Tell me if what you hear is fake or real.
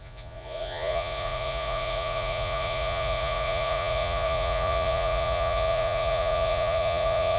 fake